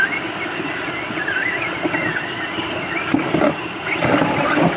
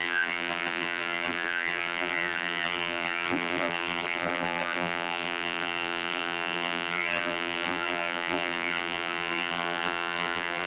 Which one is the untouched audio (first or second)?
first